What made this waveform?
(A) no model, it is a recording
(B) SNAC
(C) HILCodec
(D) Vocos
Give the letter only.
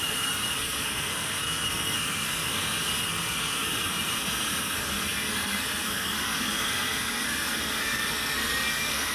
B